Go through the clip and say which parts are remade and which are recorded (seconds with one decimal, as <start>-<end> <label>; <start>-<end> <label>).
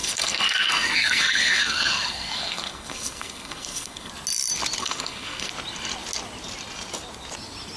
0.0-4.1 remade; 4.1-4.8 recorded; 4.8-5.5 remade; 5.5-7.8 recorded